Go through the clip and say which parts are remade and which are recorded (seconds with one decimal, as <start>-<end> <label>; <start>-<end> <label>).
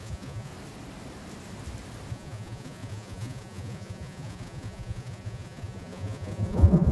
0.0-0.5 remade; 0.5-2.1 recorded; 2.1-6.9 remade